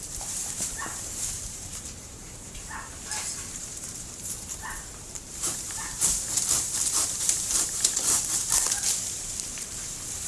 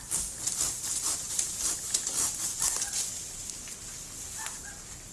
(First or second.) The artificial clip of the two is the first